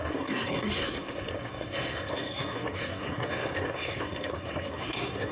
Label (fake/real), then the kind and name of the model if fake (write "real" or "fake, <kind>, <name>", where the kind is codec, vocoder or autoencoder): fake, codec, SNAC